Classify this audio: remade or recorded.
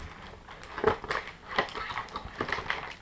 recorded